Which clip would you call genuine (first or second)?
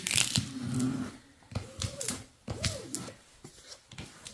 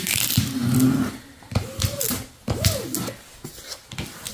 second